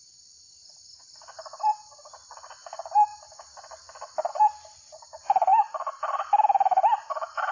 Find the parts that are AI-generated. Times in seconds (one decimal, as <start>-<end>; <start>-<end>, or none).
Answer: none